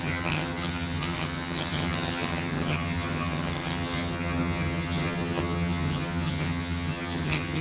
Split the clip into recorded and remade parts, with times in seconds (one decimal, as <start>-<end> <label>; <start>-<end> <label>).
0.0-7.6 remade